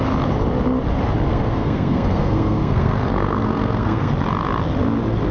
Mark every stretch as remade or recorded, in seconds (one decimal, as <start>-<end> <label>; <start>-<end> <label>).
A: 0.0-1.3 recorded; 1.3-4.1 remade; 4.1-5.3 recorded